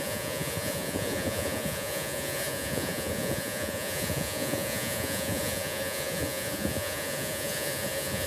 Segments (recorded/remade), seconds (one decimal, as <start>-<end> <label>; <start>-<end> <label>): 0.0-8.3 remade